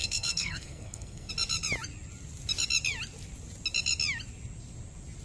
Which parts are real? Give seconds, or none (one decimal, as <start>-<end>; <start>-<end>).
1.3-5.2